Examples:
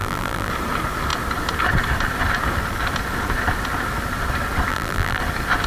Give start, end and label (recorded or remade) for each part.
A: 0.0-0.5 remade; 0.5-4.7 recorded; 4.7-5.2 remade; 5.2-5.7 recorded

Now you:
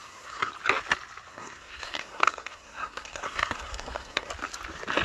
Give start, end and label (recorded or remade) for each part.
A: 0.0-0.5 remade; 0.5-1.3 recorded; 1.3-4.3 remade; 4.3-5.0 recorded

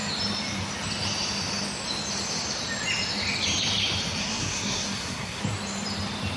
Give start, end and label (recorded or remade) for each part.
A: 0.0-4.2 recorded; 4.2-5.4 remade; 5.4-6.4 recorded

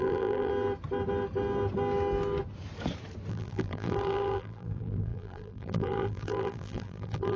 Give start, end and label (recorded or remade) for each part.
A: 0.0-0.5 remade; 0.5-3.3 recorded; 3.3-7.4 remade

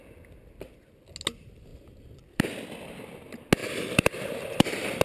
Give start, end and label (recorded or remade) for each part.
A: 0.0-3.6 recorded; 3.6-5.0 remade

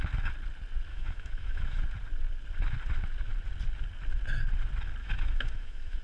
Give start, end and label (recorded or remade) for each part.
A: 0.0-0.9 recorded; 0.9-1.8 remade; 1.8-5.0 recorded; 5.0-6.0 remade

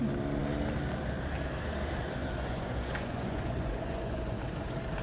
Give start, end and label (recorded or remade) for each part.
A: 0.0-2.2 recorded; 2.2-4.4 remade; 4.4-5.0 recorded